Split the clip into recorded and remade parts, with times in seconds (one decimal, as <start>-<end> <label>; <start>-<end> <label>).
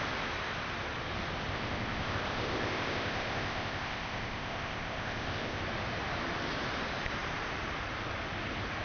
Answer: 0.0-1.5 recorded; 1.5-5.6 remade; 5.6-8.8 recorded